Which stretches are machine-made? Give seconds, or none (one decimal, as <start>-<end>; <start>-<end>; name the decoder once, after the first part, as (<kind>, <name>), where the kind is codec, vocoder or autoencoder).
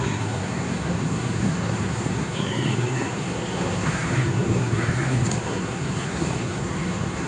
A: 0.0-7.3 (codec, SNAC)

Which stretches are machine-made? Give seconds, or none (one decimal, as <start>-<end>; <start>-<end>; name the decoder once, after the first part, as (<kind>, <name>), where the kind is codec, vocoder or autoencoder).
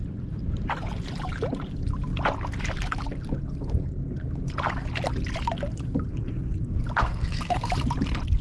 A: 7.0-7.7 (codec, SNAC)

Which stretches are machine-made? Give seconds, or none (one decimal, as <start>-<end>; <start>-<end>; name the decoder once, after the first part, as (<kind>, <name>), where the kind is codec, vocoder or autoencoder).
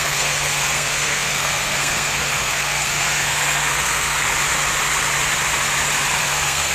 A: 0.0-4.3 (codec, SNAC); 6.2-6.7